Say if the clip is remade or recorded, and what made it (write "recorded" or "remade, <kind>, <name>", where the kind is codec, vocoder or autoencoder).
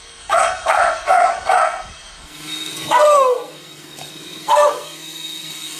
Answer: remade, codec, SNAC